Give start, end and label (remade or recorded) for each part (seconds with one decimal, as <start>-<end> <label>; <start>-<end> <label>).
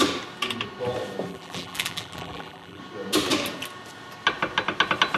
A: 0.0-1.3 recorded; 1.3-2.8 remade; 2.8-5.2 recorded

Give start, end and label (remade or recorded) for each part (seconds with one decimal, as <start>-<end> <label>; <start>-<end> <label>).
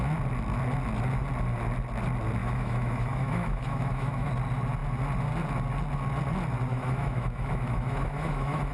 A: 0.0-2.4 recorded; 2.4-4.3 remade; 4.3-6.7 recorded; 6.7-8.7 remade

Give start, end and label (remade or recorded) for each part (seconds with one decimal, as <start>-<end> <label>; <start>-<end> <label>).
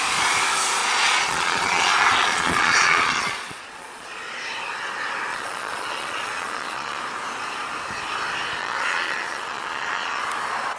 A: 0.0-0.8 recorded; 0.8-4.2 remade; 4.2-5.3 recorded; 5.3-7.0 remade; 7.0-8.6 recorded; 8.6-10.2 remade; 10.2-10.8 recorded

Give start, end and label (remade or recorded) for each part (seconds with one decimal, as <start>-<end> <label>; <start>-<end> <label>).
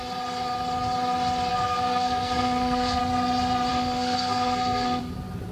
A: 0.0-1.5 recorded; 1.5-3.0 remade; 3.0-3.7 recorded; 3.7-5.0 remade; 5.0-5.5 recorded